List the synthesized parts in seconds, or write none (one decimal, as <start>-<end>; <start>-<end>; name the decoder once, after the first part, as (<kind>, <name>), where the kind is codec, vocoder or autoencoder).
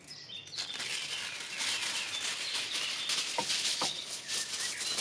3.7-4.3 (codec, HILCodec)